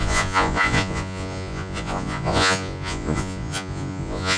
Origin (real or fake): fake